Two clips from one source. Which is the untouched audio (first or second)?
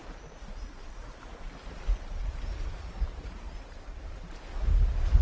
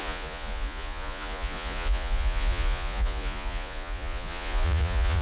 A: first